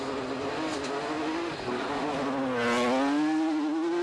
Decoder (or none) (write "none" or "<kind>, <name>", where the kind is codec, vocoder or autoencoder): none